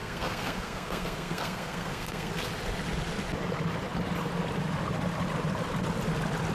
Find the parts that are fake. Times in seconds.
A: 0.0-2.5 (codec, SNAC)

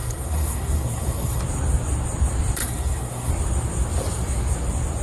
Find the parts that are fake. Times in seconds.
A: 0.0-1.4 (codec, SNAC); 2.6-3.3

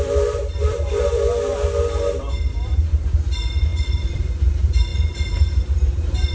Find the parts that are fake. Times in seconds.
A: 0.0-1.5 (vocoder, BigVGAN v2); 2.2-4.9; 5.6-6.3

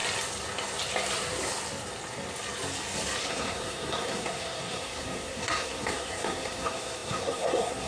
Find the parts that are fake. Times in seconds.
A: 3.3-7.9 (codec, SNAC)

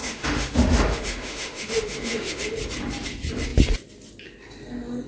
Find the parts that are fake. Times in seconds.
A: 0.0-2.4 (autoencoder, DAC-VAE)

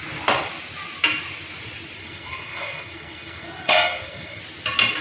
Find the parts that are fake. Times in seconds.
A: 2.0-4.4 (codec, SNAC)